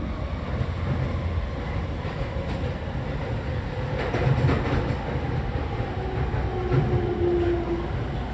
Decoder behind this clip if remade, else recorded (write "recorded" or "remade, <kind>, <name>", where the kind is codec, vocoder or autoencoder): recorded